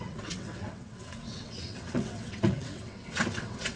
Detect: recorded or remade remade